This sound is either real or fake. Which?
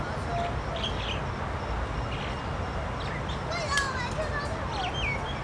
real